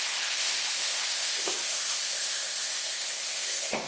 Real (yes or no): no